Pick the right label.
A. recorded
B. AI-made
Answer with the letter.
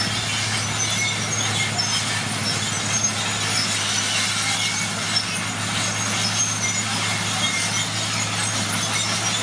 A